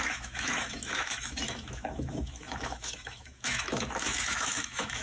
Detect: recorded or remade remade